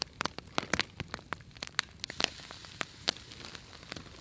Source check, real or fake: real